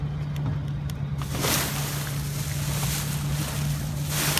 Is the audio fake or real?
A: real